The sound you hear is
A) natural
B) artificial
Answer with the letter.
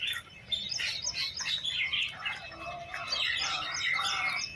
A